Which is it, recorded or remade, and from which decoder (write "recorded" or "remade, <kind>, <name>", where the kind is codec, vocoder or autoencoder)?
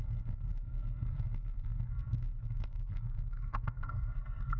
remade, codec, SNAC